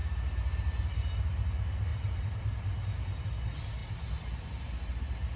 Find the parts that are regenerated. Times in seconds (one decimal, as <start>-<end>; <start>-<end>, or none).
1.9-3.2